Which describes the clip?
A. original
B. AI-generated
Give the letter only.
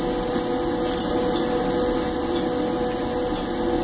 A